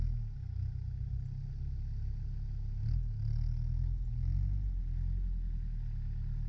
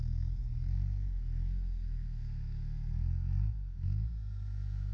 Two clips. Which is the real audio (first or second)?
first